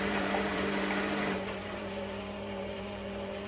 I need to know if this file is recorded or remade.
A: remade